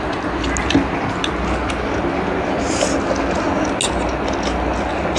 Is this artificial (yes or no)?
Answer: no